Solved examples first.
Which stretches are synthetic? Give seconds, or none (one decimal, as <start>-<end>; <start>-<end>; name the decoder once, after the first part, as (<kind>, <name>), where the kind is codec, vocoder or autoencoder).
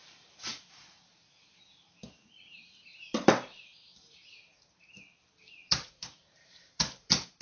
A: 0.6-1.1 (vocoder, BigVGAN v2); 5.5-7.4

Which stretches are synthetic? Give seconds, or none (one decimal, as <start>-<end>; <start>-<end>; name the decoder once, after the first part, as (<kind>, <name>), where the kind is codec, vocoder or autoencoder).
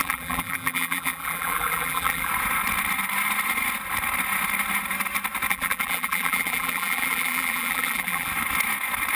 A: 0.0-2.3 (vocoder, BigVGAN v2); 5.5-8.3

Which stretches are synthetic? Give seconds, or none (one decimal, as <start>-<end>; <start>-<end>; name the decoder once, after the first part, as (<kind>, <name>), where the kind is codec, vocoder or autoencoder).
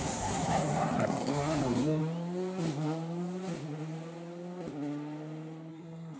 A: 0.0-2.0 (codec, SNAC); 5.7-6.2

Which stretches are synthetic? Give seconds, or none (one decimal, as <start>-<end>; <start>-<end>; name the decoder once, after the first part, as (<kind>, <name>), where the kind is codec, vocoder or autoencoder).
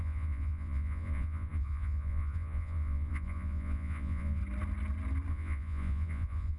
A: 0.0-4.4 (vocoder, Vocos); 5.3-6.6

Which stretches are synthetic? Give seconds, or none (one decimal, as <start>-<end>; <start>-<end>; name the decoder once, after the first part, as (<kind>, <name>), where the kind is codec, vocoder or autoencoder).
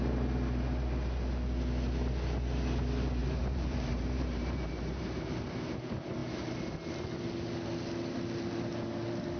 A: 3.2-5.5 (vocoder, BigVGAN v2)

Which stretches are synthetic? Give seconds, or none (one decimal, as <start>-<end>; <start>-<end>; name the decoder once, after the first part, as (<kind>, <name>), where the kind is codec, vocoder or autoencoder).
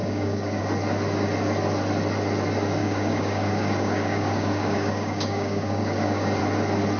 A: 0.0-0.6 (codec, DAC); 2.8-6.4